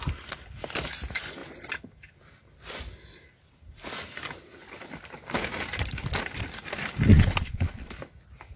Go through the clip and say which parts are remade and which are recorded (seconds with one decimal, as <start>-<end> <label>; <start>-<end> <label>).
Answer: 0.0-7.1 recorded; 7.1-7.9 remade; 7.9-8.6 recorded